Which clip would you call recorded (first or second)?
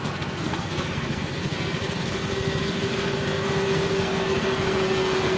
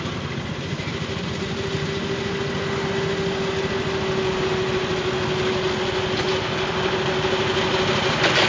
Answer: second